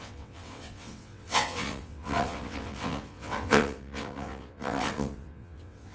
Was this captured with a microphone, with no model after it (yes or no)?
no